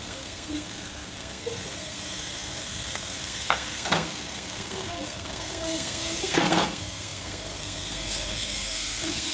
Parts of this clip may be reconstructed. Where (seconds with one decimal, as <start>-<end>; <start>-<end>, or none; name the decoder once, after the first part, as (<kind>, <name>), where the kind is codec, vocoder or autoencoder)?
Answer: 0.0-9.3 (codec, SNAC)